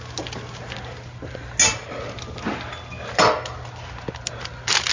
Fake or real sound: real